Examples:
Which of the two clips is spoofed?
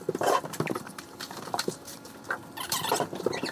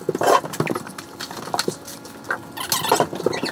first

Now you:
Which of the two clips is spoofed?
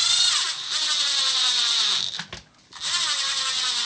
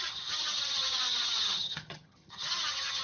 second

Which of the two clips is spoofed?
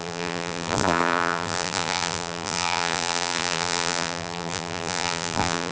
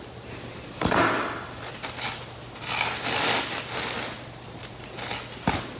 first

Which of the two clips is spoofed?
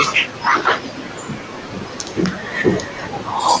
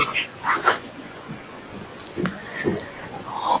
second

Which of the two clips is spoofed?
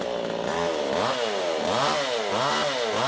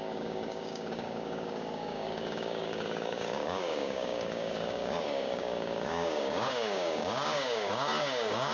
second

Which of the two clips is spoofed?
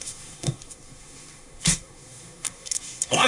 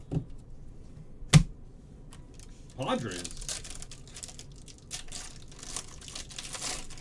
first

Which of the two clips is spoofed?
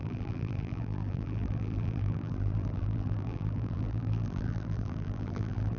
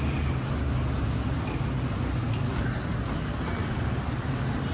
first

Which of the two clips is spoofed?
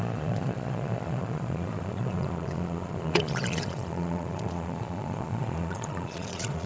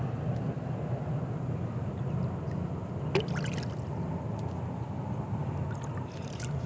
first